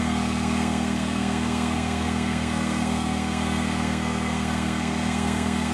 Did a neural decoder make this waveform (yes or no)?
yes